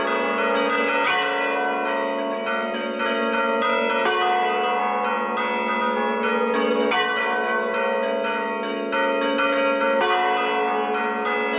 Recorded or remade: recorded